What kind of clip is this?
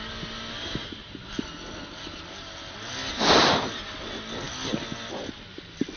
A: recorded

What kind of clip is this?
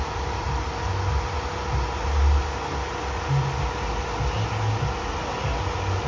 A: recorded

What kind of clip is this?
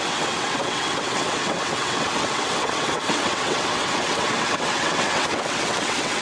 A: remade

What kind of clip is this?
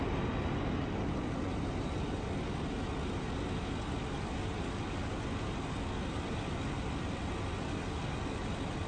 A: recorded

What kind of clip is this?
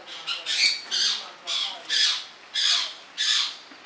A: recorded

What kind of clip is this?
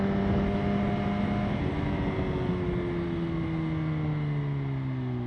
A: recorded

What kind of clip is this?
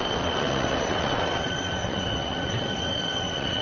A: remade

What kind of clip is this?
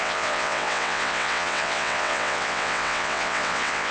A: remade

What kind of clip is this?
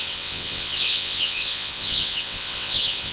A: remade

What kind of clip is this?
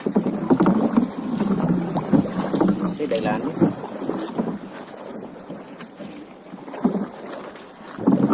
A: recorded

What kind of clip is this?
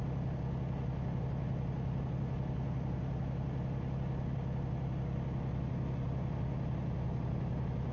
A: recorded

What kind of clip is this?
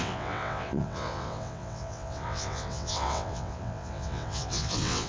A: remade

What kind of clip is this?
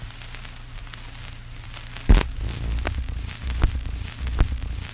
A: recorded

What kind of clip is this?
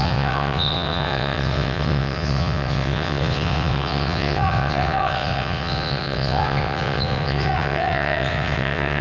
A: remade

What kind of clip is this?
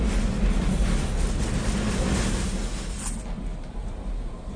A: recorded